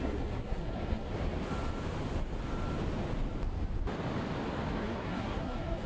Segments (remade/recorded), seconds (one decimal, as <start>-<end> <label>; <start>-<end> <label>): 0.0-1.2 remade; 1.2-4.7 recorded; 4.7-5.9 remade